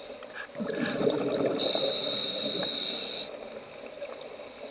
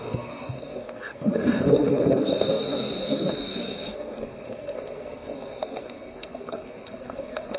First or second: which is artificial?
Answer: second